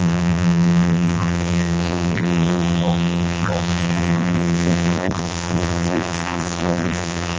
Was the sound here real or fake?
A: fake